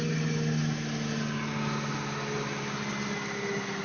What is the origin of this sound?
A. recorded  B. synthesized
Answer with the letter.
A